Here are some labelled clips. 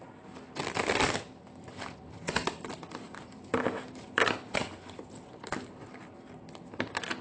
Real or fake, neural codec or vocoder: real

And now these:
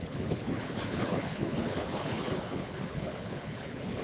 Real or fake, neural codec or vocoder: fake, codec, HILCodec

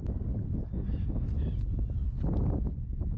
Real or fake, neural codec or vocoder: real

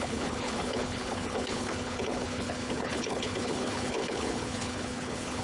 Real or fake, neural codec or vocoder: fake, codec, HILCodec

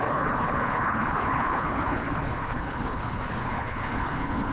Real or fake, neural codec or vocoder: fake, codec, HILCodec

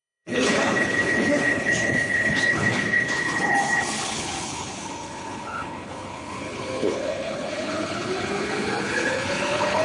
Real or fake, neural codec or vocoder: fake, codec, HILCodec